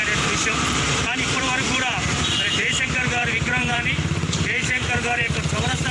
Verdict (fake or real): fake